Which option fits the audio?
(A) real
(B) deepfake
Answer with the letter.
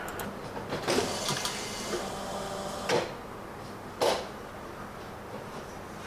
A